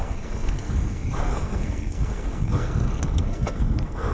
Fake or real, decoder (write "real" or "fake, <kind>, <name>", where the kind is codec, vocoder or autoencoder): fake, codec, SNAC